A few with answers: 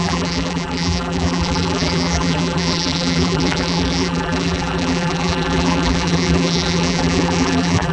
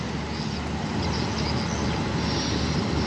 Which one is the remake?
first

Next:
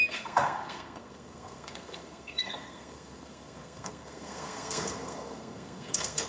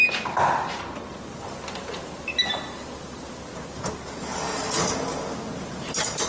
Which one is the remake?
first